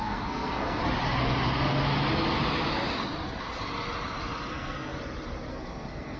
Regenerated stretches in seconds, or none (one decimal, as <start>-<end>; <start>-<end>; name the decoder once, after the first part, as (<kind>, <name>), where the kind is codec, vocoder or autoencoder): 0.0-0.8 (codec, SNAC); 4.5-4.9; 5.5-6.2